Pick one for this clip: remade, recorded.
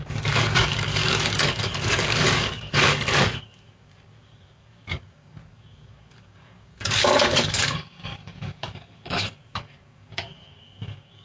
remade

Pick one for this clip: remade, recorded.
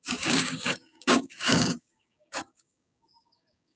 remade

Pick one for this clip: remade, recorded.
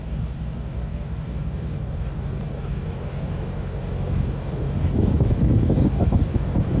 remade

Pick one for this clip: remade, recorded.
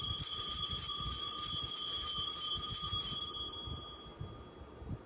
recorded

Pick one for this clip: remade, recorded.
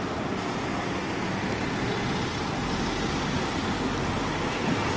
recorded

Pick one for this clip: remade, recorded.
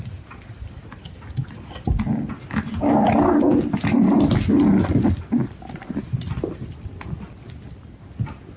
recorded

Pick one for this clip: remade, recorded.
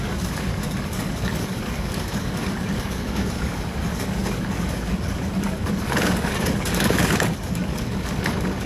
remade